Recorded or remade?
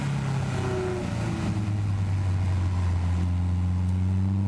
recorded